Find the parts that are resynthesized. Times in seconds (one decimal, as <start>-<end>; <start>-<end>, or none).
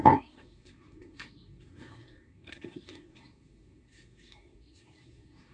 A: 0.0-5.5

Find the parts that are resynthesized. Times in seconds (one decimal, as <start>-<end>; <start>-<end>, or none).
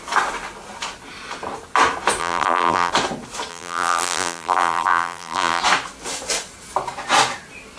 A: 2.2-2.9; 3.5-5.6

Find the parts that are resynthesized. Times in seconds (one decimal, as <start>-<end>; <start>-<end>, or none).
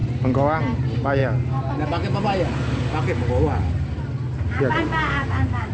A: none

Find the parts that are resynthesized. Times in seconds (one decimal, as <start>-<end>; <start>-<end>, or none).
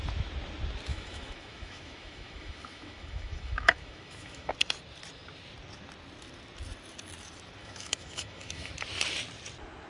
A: 0.9-4.5; 7.6-8.7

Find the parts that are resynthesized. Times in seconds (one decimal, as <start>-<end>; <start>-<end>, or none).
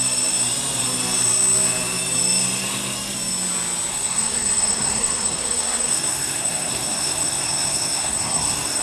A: 3.9-8.8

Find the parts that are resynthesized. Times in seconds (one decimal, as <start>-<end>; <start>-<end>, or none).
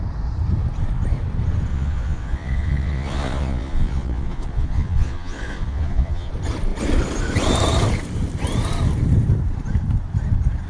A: 1.7-6.3